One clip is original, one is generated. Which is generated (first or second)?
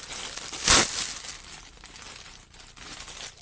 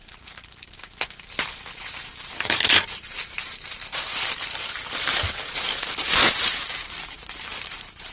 second